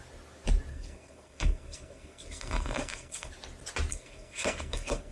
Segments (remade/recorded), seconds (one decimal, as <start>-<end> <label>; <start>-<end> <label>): 0.0-0.7 recorded; 0.7-3.3 remade; 3.3-3.9 recorded; 3.9-5.1 remade